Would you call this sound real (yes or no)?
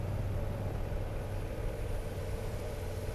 yes